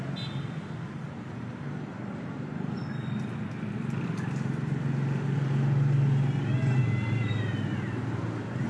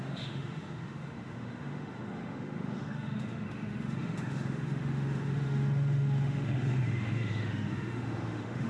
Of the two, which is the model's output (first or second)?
second